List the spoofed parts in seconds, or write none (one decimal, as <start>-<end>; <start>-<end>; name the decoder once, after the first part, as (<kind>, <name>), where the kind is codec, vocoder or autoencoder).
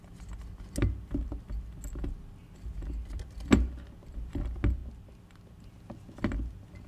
none